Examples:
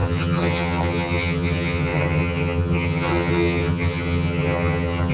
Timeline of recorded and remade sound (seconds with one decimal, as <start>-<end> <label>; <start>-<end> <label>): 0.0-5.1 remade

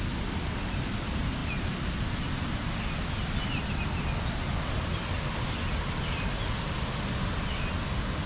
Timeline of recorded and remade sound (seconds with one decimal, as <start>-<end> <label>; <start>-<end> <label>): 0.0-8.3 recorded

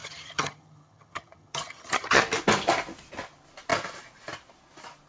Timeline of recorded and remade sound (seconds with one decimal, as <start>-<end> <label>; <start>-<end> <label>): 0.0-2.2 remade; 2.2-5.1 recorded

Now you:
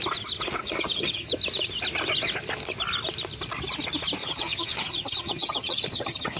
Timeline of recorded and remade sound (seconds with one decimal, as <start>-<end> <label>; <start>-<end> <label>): 0.0-0.6 recorded; 0.6-1.3 remade; 1.3-4.2 recorded; 4.2-6.4 remade

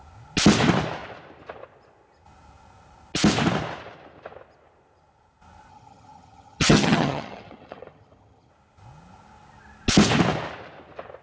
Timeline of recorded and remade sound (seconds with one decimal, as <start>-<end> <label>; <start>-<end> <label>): 0.0-5.7 recorded; 5.7-8.5 remade; 8.5-11.2 recorded

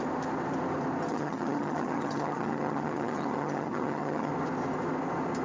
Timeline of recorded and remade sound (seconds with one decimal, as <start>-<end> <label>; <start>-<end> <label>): 0.0-1.1 recorded; 1.1-4.3 remade; 4.3-5.4 recorded